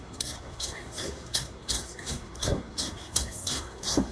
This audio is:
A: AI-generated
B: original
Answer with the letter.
A